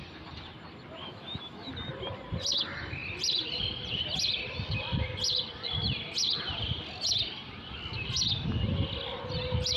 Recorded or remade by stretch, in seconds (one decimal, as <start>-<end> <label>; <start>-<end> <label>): 0.0-1.0 recorded; 1.0-1.7 remade; 1.7-9.8 recorded